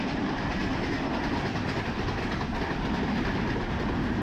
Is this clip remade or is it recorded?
recorded